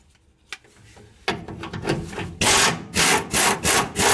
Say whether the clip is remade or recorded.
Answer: recorded